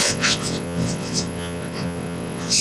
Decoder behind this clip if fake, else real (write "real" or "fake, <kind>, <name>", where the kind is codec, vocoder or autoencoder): fake, vocoder, WaveNeXt